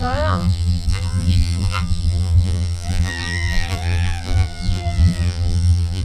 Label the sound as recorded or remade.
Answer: remade